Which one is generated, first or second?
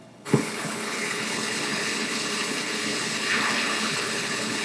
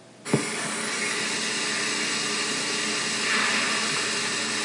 first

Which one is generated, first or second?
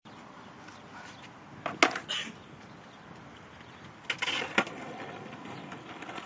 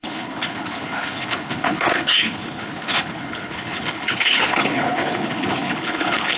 second